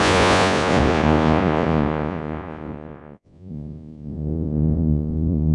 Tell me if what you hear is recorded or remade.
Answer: remade